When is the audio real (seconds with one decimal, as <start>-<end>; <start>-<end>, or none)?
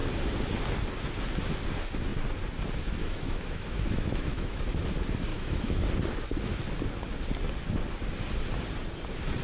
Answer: 0.0-3.0; 4.6-5.3; 5.9-9.4